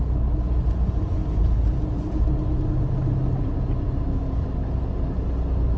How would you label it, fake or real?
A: real